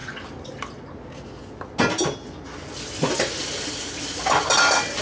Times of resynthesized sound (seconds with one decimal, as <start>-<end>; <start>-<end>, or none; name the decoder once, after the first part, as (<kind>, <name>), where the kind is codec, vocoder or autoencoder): none